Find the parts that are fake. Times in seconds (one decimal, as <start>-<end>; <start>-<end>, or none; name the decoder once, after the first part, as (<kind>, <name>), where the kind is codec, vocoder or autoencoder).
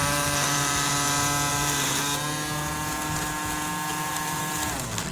0.0-0.9 (vocoder, BigVGAN v2); 1.5-2.0; 3.9-4.4